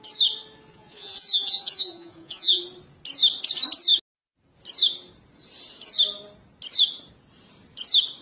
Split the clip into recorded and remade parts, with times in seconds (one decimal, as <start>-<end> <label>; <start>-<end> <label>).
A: 0.0-0.7 recorded; 0.7-2.6 remade; 2.6-8.2 recorded

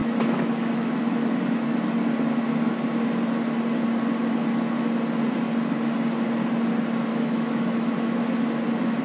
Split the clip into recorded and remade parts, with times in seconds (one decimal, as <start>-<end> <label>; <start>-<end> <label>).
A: 0.0-1.0 remade; 1.0-7.1 recorded; 7.1-8.2 remade; 8.2-9.0 recorded

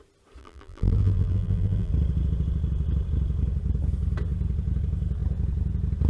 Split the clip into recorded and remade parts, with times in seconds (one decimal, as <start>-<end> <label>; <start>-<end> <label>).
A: 0.0-0.4 recorded; 0.4-1.9 remade; 1.9-6.1 recorded

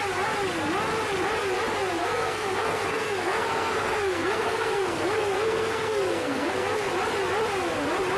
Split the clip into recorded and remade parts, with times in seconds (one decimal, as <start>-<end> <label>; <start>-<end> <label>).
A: 0.0-2.0 recorded; 2.0-6.9 remade; 6.9-8.2 recorded

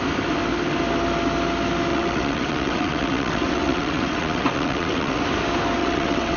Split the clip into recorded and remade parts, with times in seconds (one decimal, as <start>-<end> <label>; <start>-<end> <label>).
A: 0.0-1.9 recorded; 1.9-5.2 remade; 5.2-5.8 recorded; 5.8-6.4 remade

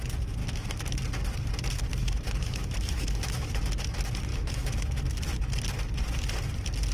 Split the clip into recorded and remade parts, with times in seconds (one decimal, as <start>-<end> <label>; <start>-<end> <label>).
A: 0.0-0.4 recorded; 0.4-1.0 remade; 1.0-1.9 recorded; 1.9-3.6 remade; 3.6-4.3 recorded; 4.3-5.0 remade; 5.0-6.9 recorded